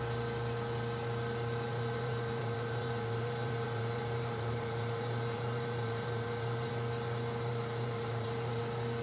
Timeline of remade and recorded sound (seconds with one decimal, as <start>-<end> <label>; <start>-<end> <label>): 0.0-1.7 recorded; 1.7-6.7 remade; 6.7-7.5 recorded; 7.5-8.6 remade; 8.6-9.0 recorded